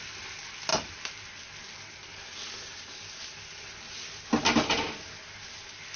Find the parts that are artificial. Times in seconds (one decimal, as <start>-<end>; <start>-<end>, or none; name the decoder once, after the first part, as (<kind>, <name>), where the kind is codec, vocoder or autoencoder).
none